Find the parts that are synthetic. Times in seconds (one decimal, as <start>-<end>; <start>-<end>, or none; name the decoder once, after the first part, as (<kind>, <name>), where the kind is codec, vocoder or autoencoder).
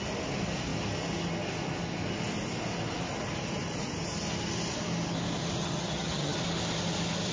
5.6-6.4 (vocoder, HiFi-GAN)